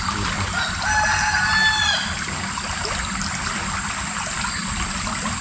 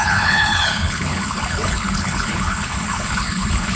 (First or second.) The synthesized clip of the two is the second